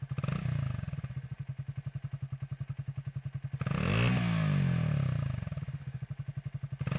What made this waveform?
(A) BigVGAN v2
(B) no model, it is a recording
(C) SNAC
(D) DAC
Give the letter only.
B